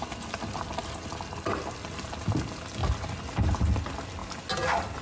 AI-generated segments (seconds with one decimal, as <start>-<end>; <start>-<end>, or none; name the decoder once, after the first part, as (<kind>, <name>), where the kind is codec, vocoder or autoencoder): none